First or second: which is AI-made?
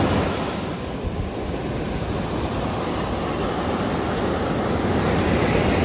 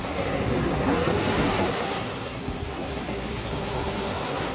second